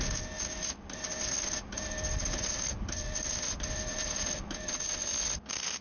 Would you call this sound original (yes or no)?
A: yes